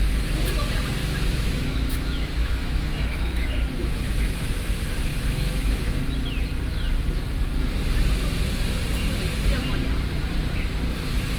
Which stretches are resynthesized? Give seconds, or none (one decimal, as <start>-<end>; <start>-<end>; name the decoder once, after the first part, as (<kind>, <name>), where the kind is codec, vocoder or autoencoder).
1.0-4.4 (autoencoder, DAC-VAE); 5.1-6.0